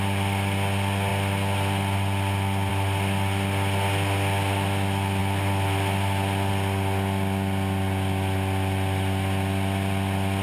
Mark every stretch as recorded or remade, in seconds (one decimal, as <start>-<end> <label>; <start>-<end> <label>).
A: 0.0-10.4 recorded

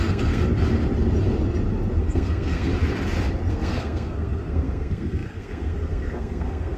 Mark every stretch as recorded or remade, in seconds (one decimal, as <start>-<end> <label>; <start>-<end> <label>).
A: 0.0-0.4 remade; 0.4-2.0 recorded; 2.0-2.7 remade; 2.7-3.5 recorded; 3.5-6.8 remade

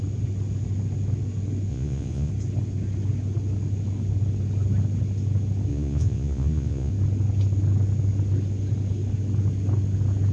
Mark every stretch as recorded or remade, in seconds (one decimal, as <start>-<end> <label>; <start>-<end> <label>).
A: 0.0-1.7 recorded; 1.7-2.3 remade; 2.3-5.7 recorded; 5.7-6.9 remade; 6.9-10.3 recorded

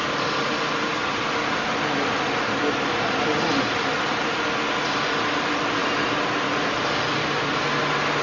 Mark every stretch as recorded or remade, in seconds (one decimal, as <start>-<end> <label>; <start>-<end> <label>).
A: 0.0-8.2 recorded